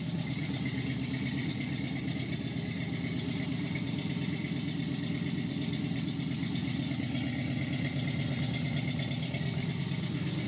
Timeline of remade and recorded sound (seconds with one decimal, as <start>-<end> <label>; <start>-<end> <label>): 0.0-6.6 remade; 6.6-7.6 recorded; 7.6-10.5 remade